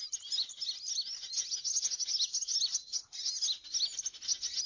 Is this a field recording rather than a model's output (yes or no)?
yes